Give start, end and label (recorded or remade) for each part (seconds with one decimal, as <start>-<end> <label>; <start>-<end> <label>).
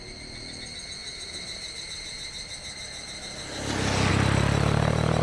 0.0-5.2 recorded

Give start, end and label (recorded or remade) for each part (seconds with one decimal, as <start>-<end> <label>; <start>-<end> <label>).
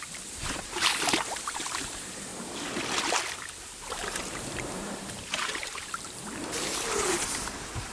0.0-2.3 remade; 2.3-3.6 recorded; 3.6-7.9 remade